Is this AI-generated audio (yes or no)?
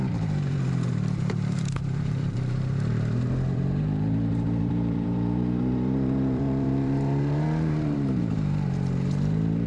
yes